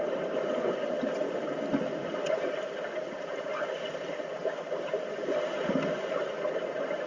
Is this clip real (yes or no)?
yes